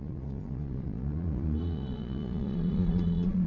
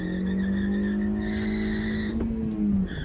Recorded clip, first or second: second